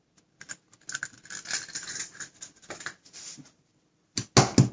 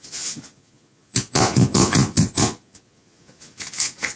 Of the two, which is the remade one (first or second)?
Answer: second